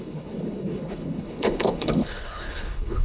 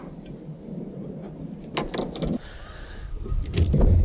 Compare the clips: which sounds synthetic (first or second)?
first